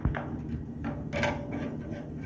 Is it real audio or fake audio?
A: real